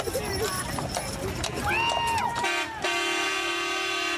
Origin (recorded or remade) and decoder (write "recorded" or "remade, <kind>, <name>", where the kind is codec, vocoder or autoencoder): recorded